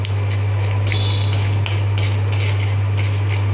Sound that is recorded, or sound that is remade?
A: recorded